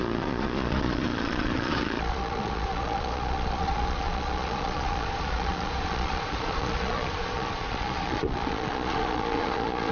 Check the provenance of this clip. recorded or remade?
remade